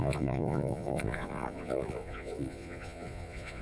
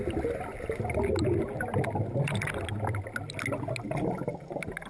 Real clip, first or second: second